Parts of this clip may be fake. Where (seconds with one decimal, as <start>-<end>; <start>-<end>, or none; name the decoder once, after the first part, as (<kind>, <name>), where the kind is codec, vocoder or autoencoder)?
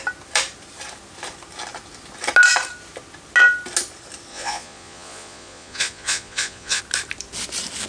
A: 4.3-6.8 (vocoder, Vocos)